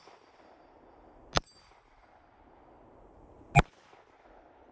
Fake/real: real